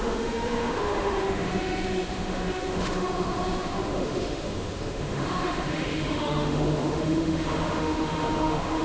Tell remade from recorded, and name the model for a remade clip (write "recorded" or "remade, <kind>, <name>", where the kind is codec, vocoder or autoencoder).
remade, autoencoder, DAC-VAE